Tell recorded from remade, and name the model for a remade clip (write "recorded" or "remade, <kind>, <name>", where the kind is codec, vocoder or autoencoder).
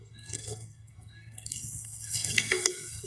remade, codec, SNAC